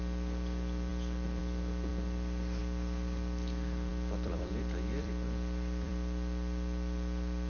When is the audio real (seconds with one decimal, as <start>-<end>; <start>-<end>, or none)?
0.0-1.9; 2.6-3.9